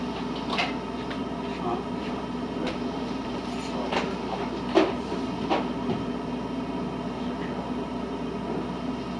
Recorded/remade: recorded